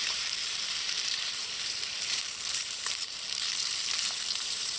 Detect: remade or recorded remade